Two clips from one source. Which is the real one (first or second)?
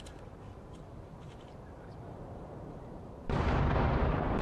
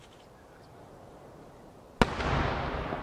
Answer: second